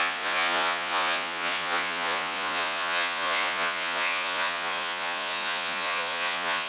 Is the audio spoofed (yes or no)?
yes